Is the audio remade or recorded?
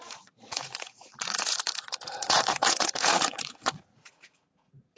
remade